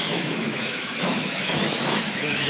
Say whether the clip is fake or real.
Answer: fake